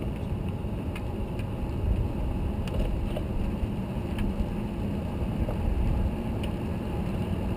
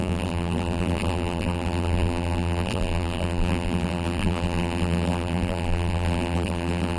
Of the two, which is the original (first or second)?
first